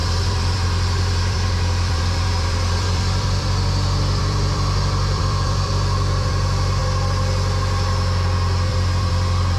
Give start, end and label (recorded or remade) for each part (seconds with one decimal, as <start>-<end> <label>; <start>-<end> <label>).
0.0-6.8 remade; 6.8-8.7 recorded; 8.7-9.6 remade